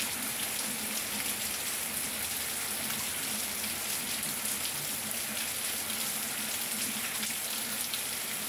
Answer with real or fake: real